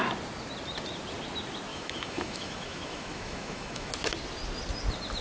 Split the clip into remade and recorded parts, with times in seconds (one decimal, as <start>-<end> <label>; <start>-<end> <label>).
0.0-1.7 recorded; 1.7-3.9 remade; 3.9-5.2 recorded